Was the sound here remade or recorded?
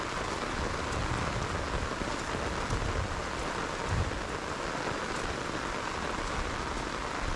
recorded